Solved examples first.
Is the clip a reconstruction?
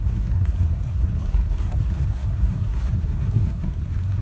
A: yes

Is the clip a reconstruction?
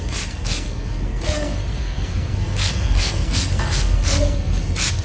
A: yes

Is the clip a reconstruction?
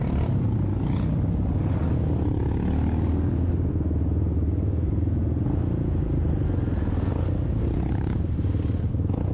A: no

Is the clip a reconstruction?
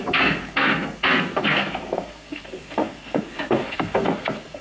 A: yes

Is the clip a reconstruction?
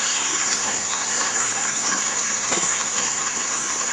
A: yes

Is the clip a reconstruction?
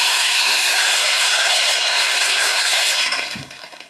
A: yes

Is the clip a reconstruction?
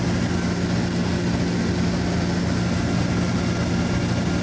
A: no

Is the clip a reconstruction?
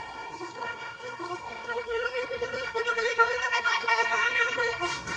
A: yes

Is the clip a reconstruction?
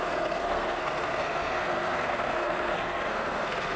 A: yes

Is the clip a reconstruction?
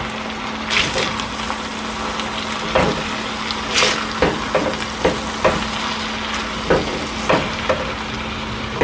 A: no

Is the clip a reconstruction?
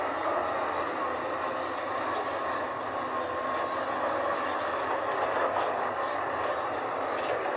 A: no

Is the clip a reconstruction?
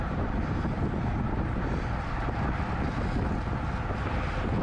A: no